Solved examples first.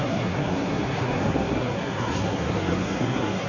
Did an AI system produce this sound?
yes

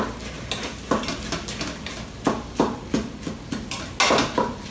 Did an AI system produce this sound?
no